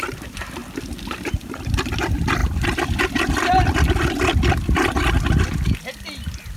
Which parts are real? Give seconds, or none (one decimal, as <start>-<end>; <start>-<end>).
0.0-6.6